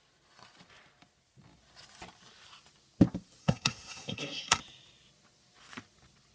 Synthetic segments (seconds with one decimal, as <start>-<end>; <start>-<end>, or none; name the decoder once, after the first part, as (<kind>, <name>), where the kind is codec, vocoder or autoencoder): 3.4-4.6 (codec, SNAC)